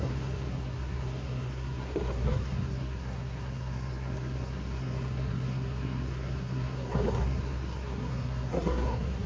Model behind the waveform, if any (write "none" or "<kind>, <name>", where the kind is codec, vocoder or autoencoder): codec, SNAC